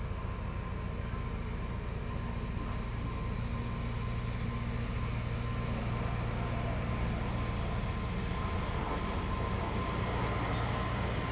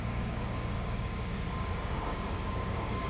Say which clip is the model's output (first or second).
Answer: second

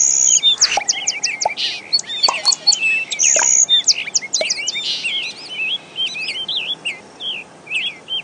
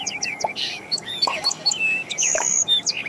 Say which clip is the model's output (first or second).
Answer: second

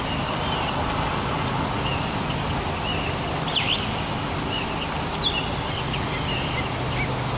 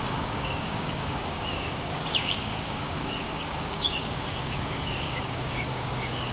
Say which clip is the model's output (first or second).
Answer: second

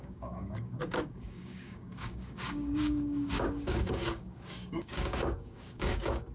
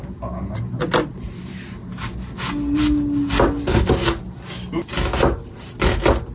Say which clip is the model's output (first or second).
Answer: first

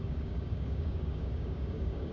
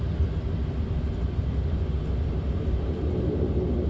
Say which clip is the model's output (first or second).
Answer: first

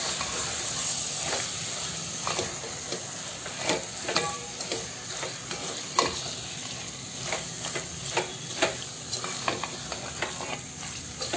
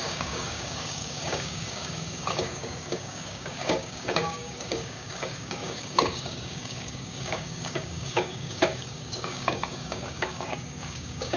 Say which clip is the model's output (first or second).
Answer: second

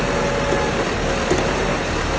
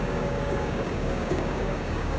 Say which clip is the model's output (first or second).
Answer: second